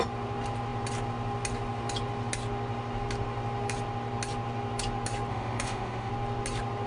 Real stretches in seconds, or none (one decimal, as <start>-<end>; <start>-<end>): 0.0-5.3; 6.1-6.9